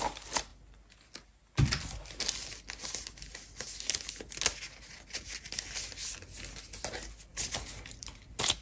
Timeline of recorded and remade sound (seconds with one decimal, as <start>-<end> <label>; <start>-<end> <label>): 0.0-8.6 recorded